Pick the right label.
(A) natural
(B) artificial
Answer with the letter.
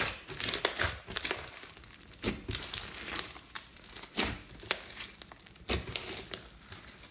A